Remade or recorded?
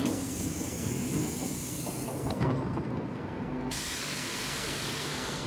remade